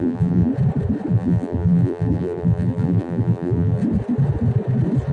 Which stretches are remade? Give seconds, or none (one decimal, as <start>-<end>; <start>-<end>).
0.0-0.5; 1.1-3.8